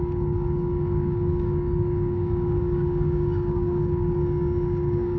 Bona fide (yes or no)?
no